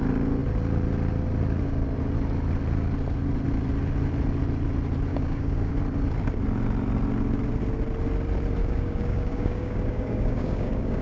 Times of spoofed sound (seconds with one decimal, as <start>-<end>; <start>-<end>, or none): 5.1-5.7; 8.6-11.0